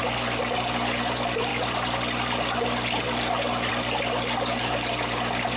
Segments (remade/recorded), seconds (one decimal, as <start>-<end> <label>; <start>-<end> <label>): 0.0-5.6 recorded